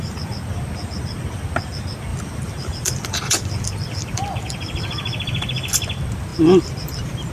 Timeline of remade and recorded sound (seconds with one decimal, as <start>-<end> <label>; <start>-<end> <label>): 0.0-2.1 recorded; 2.1-5.7 remade; 5.7-6.3 recorded; 6.3-7.3 remade